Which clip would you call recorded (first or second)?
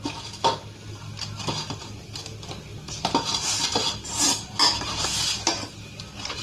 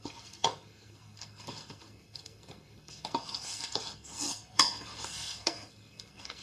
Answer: first